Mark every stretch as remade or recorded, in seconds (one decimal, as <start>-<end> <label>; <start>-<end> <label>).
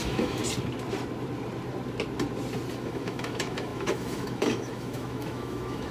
0.0-0.4 remade; 0.4-2.8 recorded; 2.8-5.9 remade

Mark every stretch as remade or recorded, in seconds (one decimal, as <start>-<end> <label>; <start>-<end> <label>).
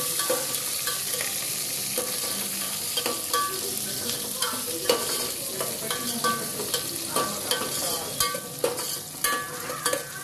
0.0-10.2 recorded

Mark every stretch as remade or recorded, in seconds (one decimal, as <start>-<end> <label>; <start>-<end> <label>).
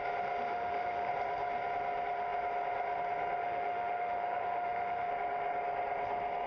0.0-0.5 recorded; 0.5-1.1 remade; 1.1-3.4 recorded; 3.4-5.1 remade; 5.1-6.5 recorded